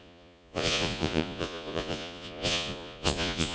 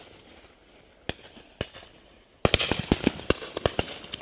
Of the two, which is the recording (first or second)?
second